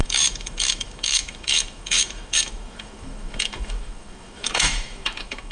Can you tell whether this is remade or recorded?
remade